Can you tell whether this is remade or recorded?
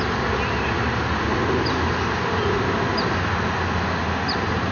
recorded